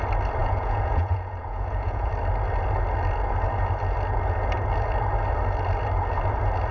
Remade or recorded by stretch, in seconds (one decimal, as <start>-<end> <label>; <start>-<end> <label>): 0.0-0.4 recorded; 0.4-2.1 remade; 2.1-6.7 recorded